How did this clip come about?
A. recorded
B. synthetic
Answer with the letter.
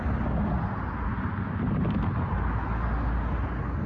A